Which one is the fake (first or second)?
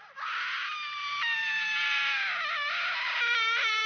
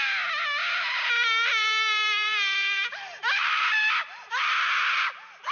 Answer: first